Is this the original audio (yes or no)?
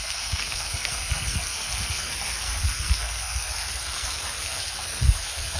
no